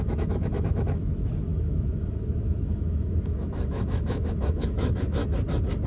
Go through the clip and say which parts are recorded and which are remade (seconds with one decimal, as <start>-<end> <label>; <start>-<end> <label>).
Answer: 0.0-5.2 remade; 5.2-5.9 recorded